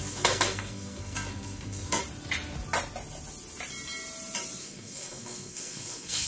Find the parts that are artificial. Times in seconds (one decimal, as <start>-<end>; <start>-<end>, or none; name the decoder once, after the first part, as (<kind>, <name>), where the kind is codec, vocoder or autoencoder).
0.0-2.0 (codec, SNAC); 4.6-6.3